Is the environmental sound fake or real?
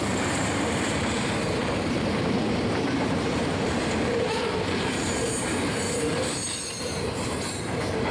fake